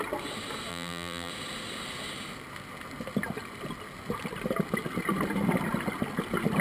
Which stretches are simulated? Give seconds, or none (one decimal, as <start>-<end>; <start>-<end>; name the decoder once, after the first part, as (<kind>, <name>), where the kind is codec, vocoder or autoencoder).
0.7-1.3 (vocoder, BigVGAN v2)